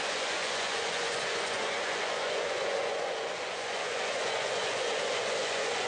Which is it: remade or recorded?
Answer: remade